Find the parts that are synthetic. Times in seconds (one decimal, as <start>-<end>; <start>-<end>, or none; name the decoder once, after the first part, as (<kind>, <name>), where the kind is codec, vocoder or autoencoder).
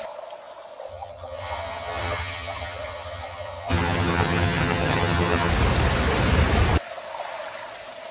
0.9-5.5 (vocoder, HiFi-GAN)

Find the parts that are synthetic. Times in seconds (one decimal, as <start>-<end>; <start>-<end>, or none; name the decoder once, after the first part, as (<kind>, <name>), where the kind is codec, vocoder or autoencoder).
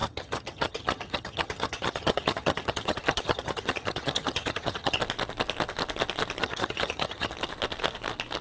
0.0-5.0 (vocoder, HiFi-GAN); 6.4-7.3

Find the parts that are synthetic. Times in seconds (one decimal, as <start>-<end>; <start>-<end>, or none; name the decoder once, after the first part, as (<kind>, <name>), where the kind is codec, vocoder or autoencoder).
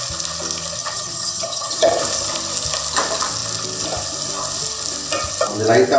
0.8-2.0 (vocoder, HiFi-GAN)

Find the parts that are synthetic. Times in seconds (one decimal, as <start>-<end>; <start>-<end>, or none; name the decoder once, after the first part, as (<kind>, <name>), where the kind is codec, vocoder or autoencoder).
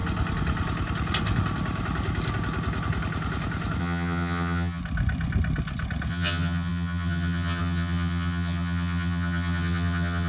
3.8-4.8 (vocoder, HiFi-GAN); 6.1-10.3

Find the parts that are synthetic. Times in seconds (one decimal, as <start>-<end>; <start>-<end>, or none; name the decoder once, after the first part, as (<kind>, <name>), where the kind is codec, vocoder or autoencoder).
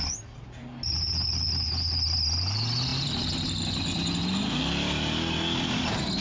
none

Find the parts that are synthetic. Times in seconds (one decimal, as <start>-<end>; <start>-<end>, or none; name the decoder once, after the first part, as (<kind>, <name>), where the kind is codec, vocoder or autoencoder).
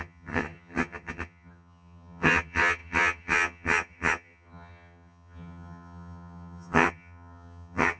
0.0-8.0 (vocoder, HiFi-GAN)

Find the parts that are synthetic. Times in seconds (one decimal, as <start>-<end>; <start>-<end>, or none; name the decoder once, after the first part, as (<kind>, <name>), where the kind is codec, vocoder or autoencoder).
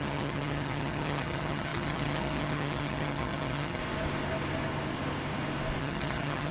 0.0-3.8 (vocoder, HiFi-GAN); 5.8-6.5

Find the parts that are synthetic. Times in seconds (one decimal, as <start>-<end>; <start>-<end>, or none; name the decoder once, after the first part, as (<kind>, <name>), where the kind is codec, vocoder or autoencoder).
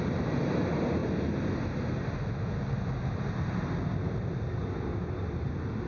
none